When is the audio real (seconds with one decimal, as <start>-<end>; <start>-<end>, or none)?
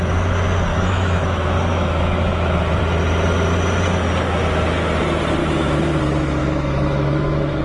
0.0-0.7; 2.8-5.4; 6.0-6.4